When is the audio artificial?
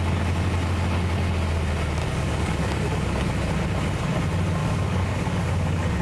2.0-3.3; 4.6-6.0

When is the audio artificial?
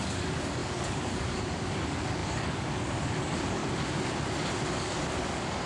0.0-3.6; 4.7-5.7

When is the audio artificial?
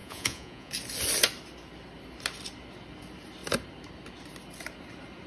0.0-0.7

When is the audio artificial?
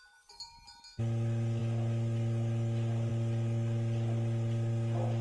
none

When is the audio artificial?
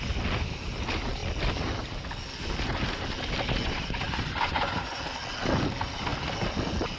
3.6-5.0